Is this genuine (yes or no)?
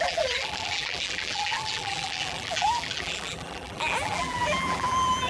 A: no